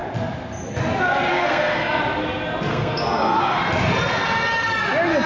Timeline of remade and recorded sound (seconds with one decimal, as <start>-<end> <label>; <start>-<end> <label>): 0.0-1.3 recorded; 1.3-2.0 remade; 2.0-2.7 recorded; 2.7-3.6 remade; 3.6-5.3 recorded